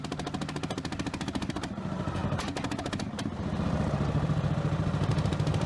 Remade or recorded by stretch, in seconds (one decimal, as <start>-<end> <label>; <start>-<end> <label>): 0.0-5.7 recorded